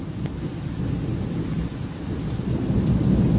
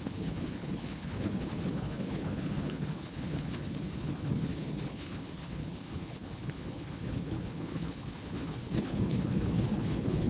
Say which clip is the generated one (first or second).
second